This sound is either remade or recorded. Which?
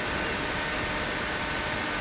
recorded